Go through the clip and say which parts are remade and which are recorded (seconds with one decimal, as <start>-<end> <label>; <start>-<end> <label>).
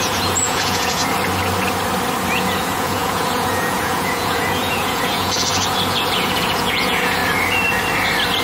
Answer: 0.0-1.0 remade; 1.0-2.3 recorded; 2.3-7.2 remade; 7.2-8.4 recorded